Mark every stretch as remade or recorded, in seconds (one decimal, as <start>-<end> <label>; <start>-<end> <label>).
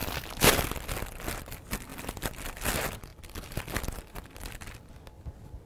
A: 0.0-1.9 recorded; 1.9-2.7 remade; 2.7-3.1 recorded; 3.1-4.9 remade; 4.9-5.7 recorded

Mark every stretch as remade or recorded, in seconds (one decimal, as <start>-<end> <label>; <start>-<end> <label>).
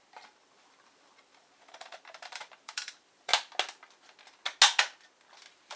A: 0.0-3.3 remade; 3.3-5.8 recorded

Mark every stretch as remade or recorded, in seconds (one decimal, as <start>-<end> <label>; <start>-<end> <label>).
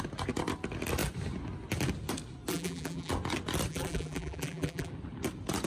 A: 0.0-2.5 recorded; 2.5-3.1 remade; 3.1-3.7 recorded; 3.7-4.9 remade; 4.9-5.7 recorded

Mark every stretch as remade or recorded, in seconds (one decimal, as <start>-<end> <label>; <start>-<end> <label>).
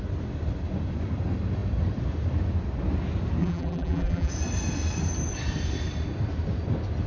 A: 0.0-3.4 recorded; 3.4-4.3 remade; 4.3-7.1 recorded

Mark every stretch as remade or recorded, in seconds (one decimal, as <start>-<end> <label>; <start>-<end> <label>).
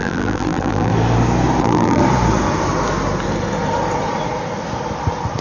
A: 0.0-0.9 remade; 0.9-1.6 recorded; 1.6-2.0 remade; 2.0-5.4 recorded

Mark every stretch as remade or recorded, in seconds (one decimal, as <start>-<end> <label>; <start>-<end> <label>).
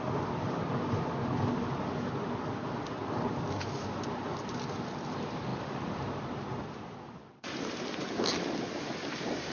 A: 0.0-9.5 recorded